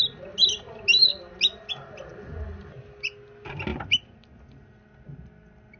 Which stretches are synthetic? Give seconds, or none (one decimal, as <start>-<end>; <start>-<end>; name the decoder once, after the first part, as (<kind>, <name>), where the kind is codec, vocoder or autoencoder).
none